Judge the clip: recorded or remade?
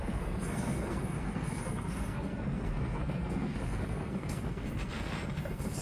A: remade